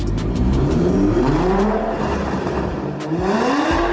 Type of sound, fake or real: fake